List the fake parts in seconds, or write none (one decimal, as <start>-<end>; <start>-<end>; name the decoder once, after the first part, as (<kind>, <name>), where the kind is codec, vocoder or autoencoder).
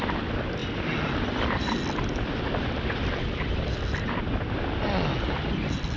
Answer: none